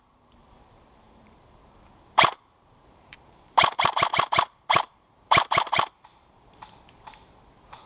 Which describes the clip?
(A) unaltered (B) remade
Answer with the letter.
B